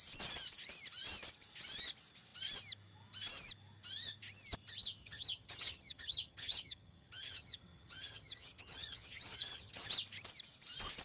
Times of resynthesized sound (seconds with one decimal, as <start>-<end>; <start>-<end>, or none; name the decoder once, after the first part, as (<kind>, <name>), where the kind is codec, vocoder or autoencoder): 5.0-9.9 (vocoder, HiFi-GAN)